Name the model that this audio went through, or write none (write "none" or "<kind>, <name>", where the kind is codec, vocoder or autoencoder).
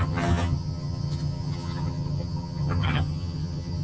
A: vocoder, HiFi-GAN